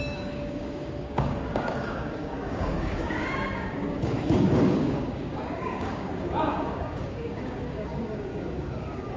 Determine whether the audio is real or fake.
fake